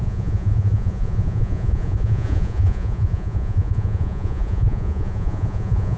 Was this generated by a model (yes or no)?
yes